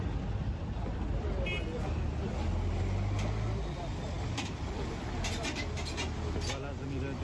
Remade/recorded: recorded